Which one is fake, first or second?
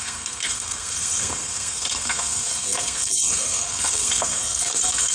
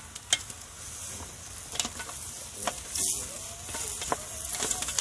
first